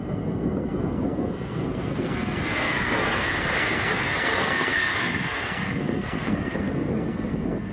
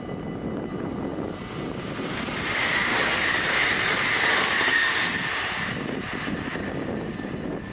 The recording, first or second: second